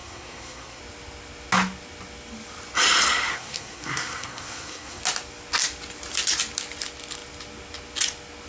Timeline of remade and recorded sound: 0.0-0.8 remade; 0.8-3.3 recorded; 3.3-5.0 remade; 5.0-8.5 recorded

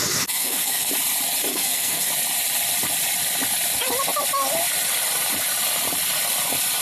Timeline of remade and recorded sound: 0.0-0.9 remade; 0.9-1.5 recorded; 1.5-2.1 remade; 2.1-6.8 recorded

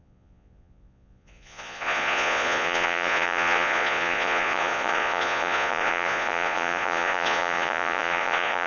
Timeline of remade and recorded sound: 0.0-8.7 remade

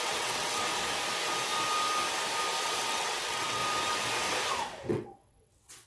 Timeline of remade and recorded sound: 0.0-0.7 remade; 0.7-2.6 recorded; 2.6-3.6 remade; 3.6-4.9 recorded; 4.9-5.9 remade

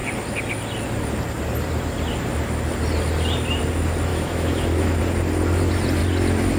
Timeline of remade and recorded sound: 0.0-4.1 recorded; 4.1-5.0 remade; 5.0-6.6 recorded

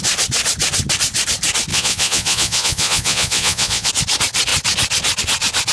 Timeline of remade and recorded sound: 0.0-1.7 recorded; 1.7-3.9 remade; 3.9-5.7 recorded

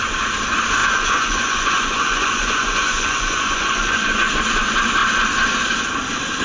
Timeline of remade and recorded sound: 0.0-0.8 recorded; 0.8-4.3 remade; 4.3-6.4 recorded